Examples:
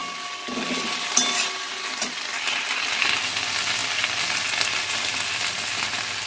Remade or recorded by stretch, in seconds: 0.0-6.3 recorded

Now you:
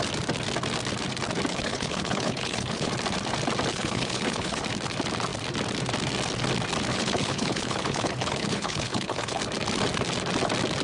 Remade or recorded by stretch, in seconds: 0.0-1.5 recorded; 1.5-2.9 remade; 2.9-3.7 recorded; 3.7-4.6 remade; 4.6-6.9 recorded; 6.9-9.4 remade; 9.4-10.8 recorded

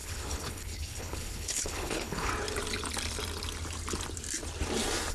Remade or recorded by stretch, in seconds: 0.0-2.3 remade; 2.3-5.1 recorded

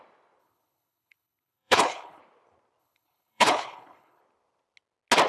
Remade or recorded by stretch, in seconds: 0.0-0.4 recorded; 0.4-2.2 remade; 2.2-2.8 recorded; 2.8-4.2 remade; 4.2-5.3 recorded

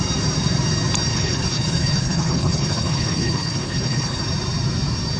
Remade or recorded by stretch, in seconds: 0.0-1.1 recorded; 1.1-4.2 remade; 4.2-5.2 recorded